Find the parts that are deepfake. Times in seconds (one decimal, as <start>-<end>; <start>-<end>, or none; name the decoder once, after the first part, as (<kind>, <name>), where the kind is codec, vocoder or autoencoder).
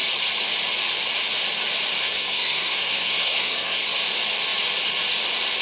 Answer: 2.0-3.9 (codec, SNAC)